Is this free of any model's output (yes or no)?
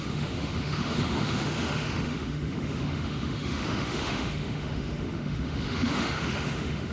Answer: no